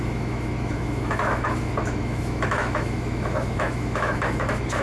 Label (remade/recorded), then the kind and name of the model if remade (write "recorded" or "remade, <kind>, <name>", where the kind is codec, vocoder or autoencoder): remade, autoencoder, DAC-VAE